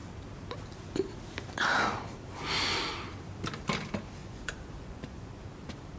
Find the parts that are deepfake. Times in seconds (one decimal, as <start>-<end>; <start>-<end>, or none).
4.2-5.3